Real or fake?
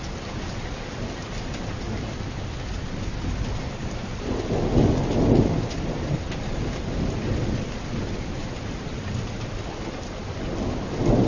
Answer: real